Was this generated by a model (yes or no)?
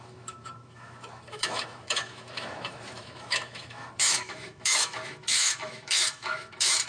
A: yes